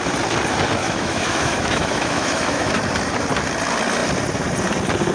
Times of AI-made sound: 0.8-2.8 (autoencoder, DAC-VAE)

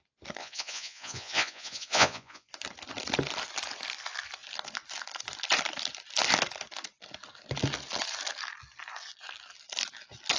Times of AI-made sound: 0.4-2.5 (vocoder, Vocos)

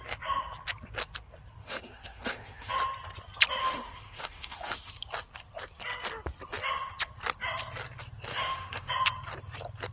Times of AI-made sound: 1.6-2.7 (autoencoder, DAC-VAE); 3.6-4.9; 8.3-8.9

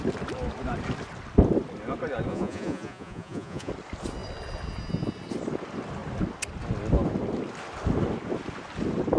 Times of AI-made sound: 2.3-3.7 (vocoder, Vocos)

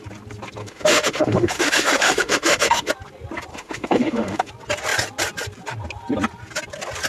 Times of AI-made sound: 0.6-2.9 (autoencoder, DAC-VAE); 3.5-4.5

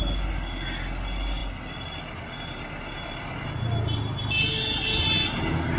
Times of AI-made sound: none

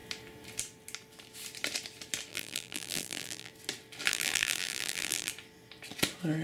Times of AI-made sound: 2.3-3.5 (vocoder, BigVGAN v2); 4.1-5.3